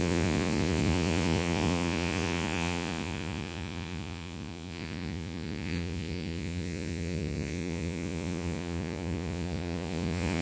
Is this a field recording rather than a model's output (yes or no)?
no